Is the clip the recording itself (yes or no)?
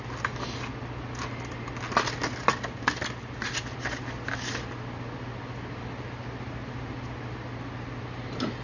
yes